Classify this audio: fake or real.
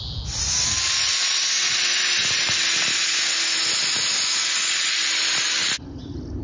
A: real